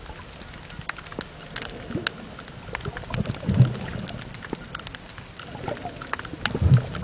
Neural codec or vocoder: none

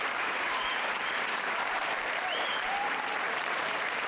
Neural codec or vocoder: vocoder, BigVGAN v2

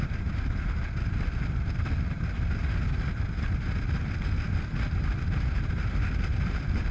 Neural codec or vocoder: none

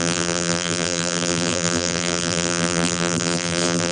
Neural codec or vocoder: vocoder, BigVGAN v2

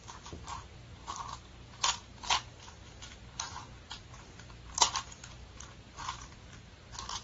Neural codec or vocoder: vocoder, BigVGAN v2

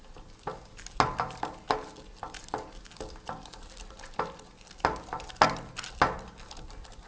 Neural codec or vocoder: none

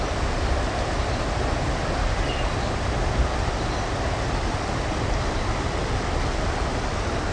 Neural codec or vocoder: none